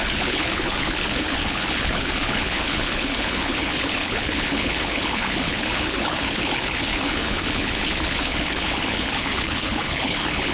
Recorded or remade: remade